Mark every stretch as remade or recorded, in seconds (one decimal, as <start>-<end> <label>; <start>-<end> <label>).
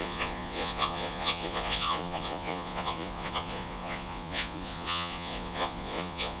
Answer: 0.0-6.4 remade